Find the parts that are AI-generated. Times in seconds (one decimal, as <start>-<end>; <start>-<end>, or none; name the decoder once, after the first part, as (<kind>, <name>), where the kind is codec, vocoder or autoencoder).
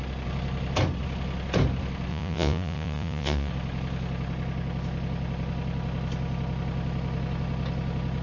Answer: 2.1-3.5 (vocoder, Vocos)